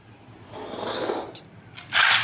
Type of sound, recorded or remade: recorded